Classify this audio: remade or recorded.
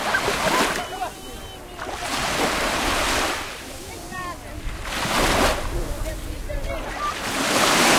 recorded